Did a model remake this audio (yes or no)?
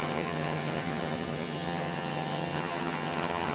yes